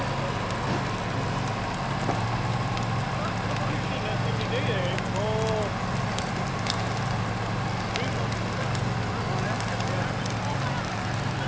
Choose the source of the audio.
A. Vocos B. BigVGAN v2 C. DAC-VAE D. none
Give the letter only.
D